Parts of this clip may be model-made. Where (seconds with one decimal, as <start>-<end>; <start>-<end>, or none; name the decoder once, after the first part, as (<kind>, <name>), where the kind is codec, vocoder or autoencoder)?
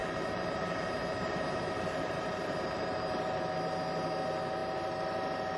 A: 0.0-3.4 (vocoder, BigVGAN v2)